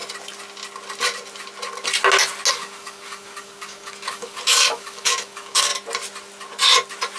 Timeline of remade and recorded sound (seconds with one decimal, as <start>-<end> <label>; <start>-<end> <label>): 0.0-2.5 recorded; 2.5-5.7 remade; 5.7-7.2 recorded